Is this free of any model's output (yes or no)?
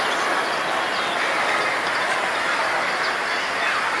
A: yes